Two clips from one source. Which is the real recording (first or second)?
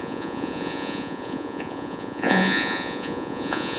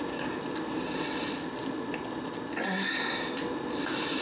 second